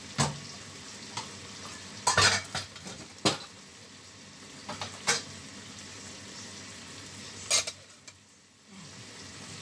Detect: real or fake real